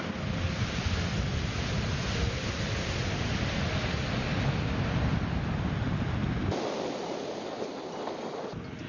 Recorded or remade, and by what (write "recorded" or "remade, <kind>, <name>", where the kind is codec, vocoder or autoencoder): recorded